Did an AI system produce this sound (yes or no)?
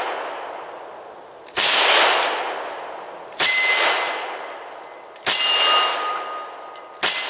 no